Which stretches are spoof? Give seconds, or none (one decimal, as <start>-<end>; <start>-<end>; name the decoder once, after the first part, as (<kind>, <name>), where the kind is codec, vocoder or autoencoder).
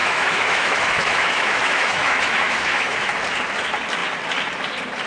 0.0-3.1 (autoencoder, DAC-VAE)